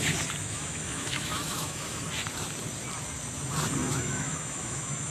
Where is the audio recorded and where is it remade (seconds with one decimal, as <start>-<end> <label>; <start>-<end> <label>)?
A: 0.0-0.4 recorded; 0.4-2.0 remade; 2.0-3.8 recorded; 3.8-5.1 remade